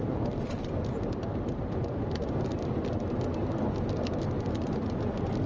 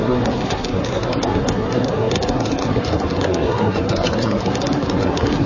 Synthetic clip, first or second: second